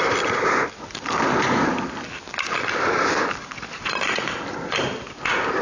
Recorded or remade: recorded